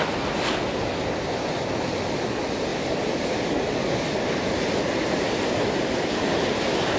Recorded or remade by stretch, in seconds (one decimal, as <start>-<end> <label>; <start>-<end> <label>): 0.0-7.0 recorded